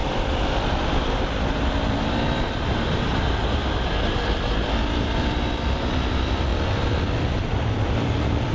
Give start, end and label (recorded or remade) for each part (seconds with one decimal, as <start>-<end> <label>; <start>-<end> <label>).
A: 0.0-3.6 remade; 3.6-4.9 recorded; 4.9-6.5 remade; 6.5-7.0 recorded; 7.0-8.5 remade